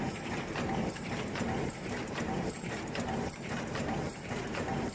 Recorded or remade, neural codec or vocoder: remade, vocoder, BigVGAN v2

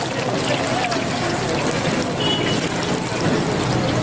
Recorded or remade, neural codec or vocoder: recorded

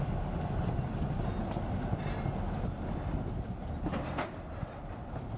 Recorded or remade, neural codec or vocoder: recorded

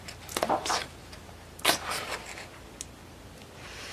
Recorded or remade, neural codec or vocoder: recorded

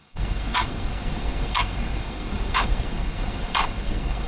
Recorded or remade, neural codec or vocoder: remade, codec, SNAC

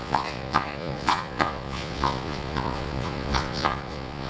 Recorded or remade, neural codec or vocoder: remade, vocoder, Vocos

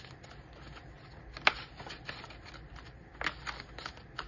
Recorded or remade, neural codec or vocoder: recorded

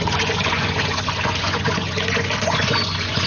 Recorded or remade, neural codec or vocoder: remade, vocoder, Vocos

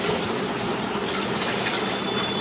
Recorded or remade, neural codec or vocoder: recorded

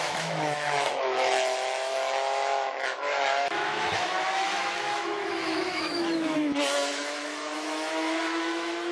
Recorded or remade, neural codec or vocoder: remade, autoencoder, DAC-VAE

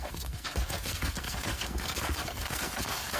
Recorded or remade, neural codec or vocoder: remade, codec, SNAC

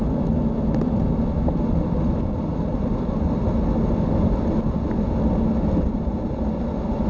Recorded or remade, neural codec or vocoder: recorded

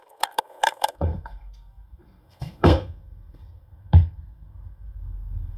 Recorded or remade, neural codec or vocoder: remade, codec, SNAC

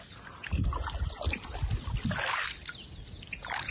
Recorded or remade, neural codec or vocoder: recorded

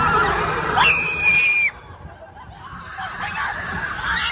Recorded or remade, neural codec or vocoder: recorded